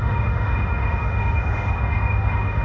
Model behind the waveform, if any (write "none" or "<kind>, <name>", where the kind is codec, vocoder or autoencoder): autoencoder, DAC-VAE